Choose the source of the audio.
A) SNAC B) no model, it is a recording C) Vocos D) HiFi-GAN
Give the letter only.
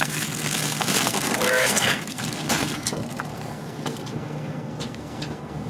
A